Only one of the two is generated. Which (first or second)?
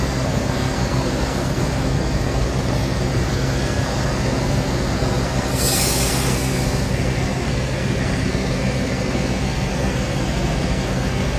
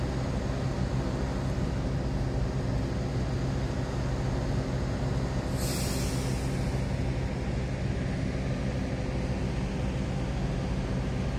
first